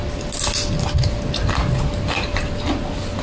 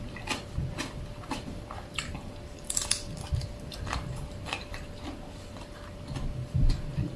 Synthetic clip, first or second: second